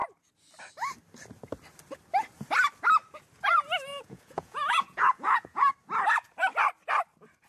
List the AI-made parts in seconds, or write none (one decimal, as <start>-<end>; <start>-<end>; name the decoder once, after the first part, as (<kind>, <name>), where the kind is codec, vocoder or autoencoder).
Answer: 3.9-5.7 (vocoder, Vocos)